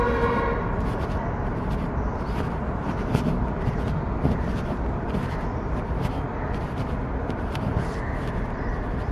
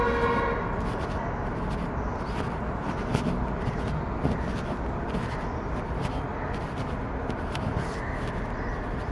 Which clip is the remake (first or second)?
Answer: first